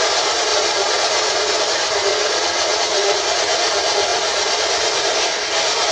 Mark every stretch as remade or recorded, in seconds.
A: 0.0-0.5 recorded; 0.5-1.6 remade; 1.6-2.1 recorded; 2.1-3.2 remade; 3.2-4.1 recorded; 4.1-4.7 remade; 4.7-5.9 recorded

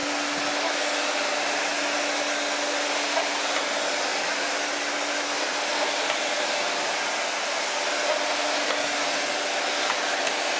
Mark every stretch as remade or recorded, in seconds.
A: 0.0-10.6 recorded

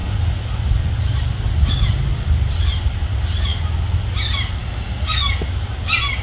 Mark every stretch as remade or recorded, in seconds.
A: 0.0-4.6 recorded; 4.6-5.3 remade; 5.3-6.2 recorded

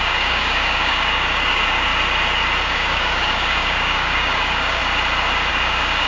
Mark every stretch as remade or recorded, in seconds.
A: 0.0-1.9 remade; 1.9-2.6 recorded; 2.6-4.8 remade; 4.8-5.5 recorded; 5.5-6.1 remade